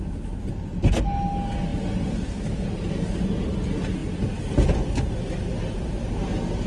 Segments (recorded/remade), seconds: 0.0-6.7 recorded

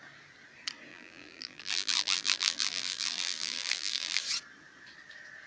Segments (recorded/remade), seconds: 0.0-0.9 recorded; 0.9-4.2 remade; 4.2-5.5 recorded

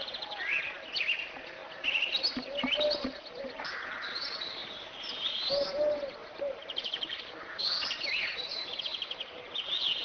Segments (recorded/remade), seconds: 0.0-6.2 recorded; 6.2-7.2 remade; 7.2-8.9 recorded; 8.9-9.5 remade; 9.5-10.0 recorded

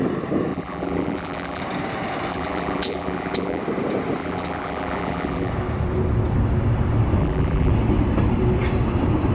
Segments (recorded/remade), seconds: 0.0-0.5 recorded; 0.5-1.6 remade; 1.6-2.3 recorded; 2.3-3.6 remade; 3.6-4.2 recorded; 4.2-5.5 remade; 5.5-7.2 recorded; 7.2-7.7 remade; 7.7-9.3 recorded